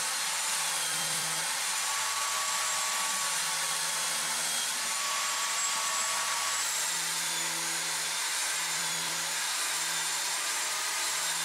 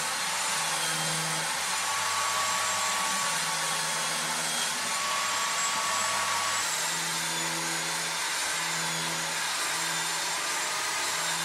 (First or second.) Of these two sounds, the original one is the second